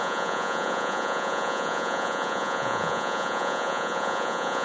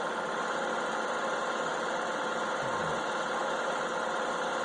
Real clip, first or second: second